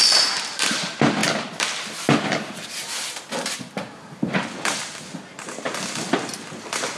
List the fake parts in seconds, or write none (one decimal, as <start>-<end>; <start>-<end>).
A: 0.0-7.0